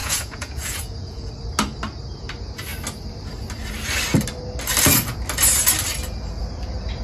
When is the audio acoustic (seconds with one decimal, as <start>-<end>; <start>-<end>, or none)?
1.3-7.0